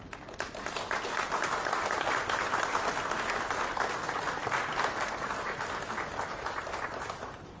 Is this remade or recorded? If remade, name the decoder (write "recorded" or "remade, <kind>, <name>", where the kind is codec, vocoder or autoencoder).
recorded